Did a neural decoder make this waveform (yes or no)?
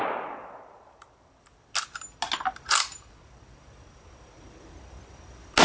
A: no